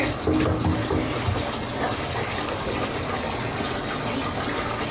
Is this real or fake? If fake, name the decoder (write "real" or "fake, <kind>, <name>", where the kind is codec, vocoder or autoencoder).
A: real